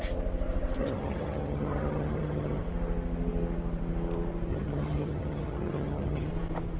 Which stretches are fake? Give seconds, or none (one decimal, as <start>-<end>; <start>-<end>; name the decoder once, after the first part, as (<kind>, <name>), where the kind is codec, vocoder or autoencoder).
0.8-2.6 (vocoder, HiFi-GAN); 4.5-6.3